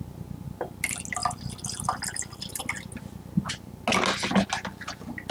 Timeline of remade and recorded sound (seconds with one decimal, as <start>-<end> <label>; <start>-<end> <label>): 0.0-5.3 recorded